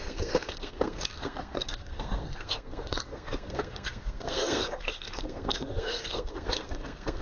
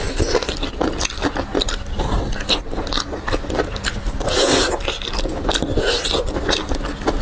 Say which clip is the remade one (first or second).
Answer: first